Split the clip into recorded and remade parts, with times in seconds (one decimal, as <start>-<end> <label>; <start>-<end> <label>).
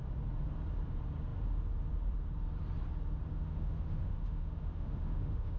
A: 0.0-3.3 recorded; 3.3-5.6 remade